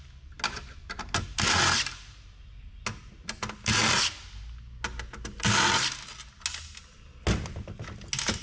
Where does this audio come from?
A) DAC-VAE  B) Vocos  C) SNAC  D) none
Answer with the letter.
D